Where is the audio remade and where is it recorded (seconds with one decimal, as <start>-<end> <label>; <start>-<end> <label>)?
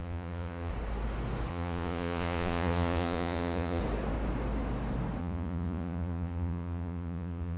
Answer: 0.0-0.7 remade; 0.7-1.5 recorded; 1.5-3.8 remade; 3.8-5.2 recorded; 5.2-7.6 remade